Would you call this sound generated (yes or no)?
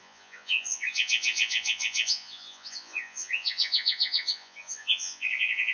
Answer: yes